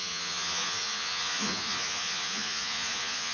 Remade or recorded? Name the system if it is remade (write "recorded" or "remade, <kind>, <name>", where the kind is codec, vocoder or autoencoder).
remade, vocoder, Vocos